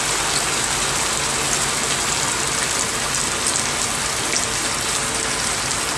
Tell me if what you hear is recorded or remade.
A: recorded